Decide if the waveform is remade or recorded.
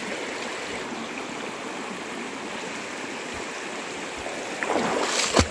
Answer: recorded